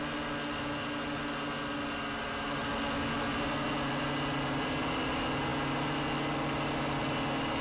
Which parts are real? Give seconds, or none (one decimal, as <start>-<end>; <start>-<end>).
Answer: 0.0-7.6